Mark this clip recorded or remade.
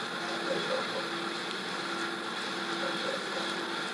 recorded